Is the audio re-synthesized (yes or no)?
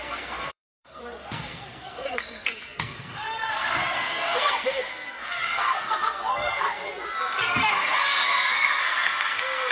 yes